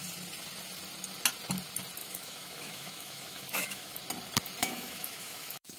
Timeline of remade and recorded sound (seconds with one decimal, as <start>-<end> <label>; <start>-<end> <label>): 0.0-2.0 recorded; 2.0-4.0 remade; 4.0-4.6 recorded; 4.6-5.8 remade